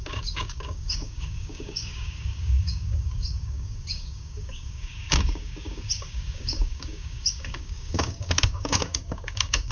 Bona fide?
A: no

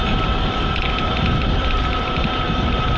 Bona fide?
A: yes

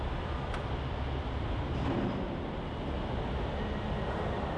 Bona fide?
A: yes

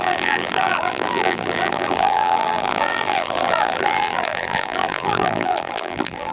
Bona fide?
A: no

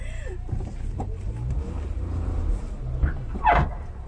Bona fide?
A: no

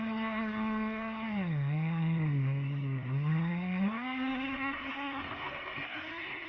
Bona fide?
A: no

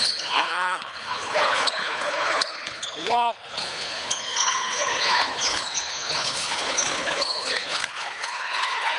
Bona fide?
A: no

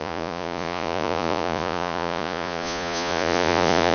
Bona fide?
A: no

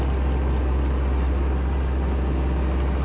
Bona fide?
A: yes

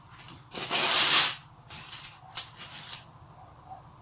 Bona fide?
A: yes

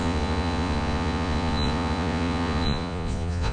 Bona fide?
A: no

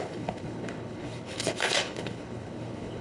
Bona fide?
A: no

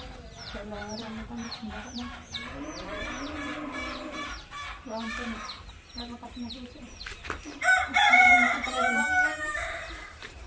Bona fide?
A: no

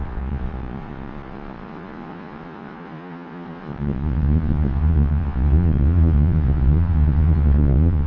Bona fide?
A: no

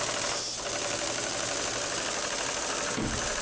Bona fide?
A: yes